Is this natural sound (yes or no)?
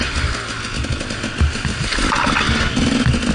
yes